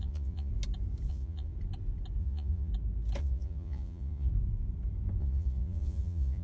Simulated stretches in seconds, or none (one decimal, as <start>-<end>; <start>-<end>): 0.0-0.5; 1.1-1.5; 2.2-2.7; 3.2-4.3; 5.2-6.4